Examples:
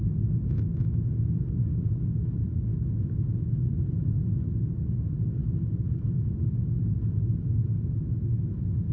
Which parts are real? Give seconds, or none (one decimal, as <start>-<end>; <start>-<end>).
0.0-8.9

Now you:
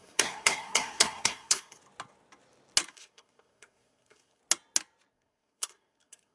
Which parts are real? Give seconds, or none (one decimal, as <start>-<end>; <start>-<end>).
1.8-2.9; 4.4-5.1

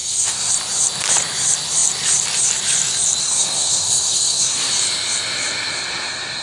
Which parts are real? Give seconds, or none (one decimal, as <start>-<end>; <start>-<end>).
0.5-3.2; 4.7-6.4